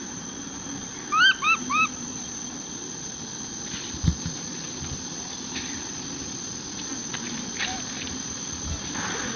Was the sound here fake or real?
real